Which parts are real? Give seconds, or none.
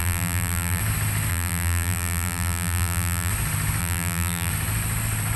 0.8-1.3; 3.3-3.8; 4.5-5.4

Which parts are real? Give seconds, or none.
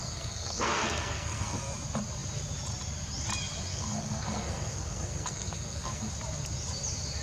1.6-3.7; 6.1-7.2